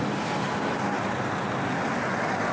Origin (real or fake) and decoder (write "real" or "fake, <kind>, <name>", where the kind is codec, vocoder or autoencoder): real